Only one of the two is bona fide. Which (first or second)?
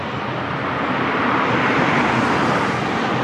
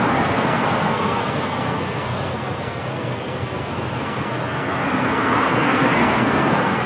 first